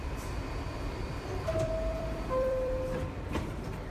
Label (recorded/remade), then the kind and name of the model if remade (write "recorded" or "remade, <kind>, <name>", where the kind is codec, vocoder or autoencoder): remade, vocoder, BigVGAN v2